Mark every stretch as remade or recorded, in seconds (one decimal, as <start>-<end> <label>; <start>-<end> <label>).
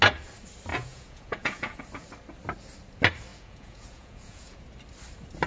0.0-0.7 recorded; 0.7-1.8 remade; 1.8-3.3 recorded; 3.3-4.6 remade; 4.6-5.5 recorded